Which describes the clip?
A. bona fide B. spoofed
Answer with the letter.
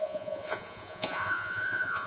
B